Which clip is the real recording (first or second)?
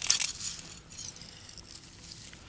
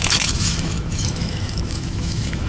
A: first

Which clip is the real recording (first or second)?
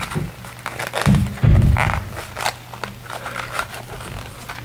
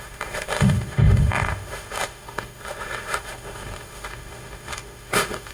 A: first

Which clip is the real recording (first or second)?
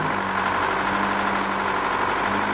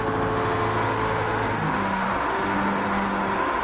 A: first